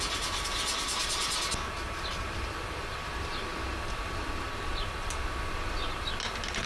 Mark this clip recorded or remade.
recorded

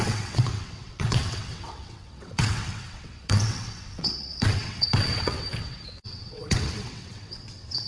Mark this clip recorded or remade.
remade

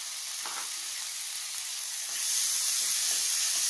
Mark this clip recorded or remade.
recorded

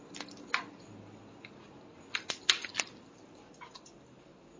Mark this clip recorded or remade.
recorded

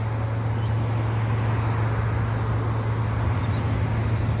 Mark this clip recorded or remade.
recorded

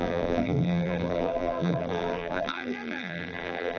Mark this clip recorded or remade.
remade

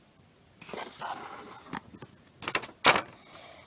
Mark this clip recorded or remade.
recorded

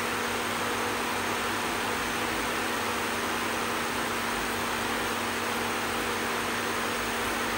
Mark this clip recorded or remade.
recorded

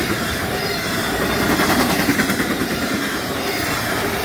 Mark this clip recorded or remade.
remade